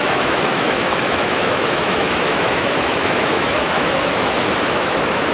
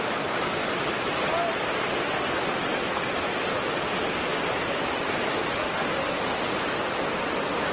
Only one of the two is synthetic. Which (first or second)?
first